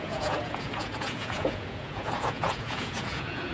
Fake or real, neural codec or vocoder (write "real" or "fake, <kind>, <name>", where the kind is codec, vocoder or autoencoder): fake, vocoder, Vocos